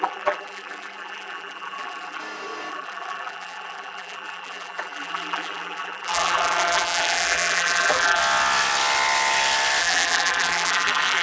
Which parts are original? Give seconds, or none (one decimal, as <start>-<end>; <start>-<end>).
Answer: 2.2-2.7; 8.2-9.8